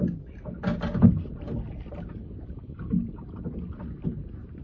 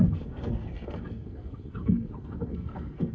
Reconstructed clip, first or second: second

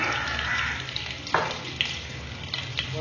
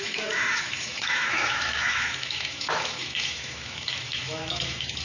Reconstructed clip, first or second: second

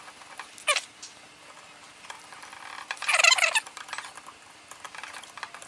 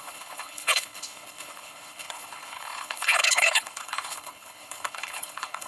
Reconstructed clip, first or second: second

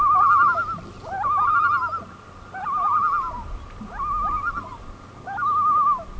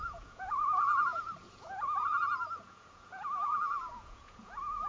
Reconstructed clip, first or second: second